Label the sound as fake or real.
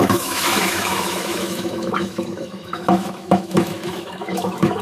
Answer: fake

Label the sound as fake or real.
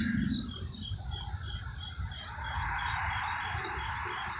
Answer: real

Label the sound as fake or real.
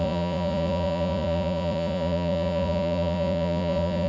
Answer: fake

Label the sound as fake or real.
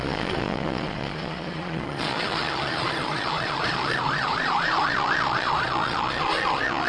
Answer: fake